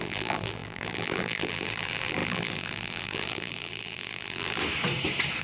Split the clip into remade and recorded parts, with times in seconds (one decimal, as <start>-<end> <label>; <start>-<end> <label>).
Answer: 0.0-4.6 remade; 4.6-5.4 recorded